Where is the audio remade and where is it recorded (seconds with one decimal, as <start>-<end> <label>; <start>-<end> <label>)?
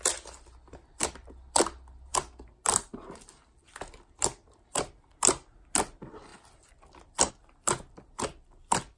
0.0-9.0 recorded